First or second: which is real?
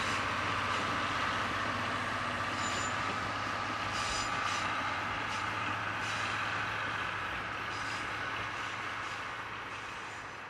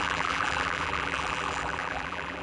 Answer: first